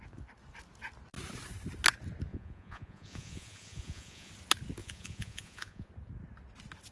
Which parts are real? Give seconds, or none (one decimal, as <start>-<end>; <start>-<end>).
0.0-2.3; 4.3-4.8; 5.9-6.9

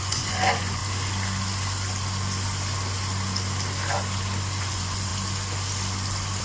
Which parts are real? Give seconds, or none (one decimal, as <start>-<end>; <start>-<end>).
0.8-4.6; 5.1-6.4

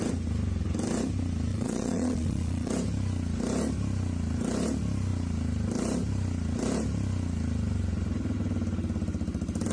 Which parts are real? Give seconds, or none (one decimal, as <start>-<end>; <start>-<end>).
0.0-1.5; 2.7-9.7

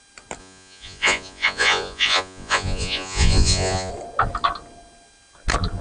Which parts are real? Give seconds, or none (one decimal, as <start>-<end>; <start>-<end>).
0.0-0.4; 3.9-5.8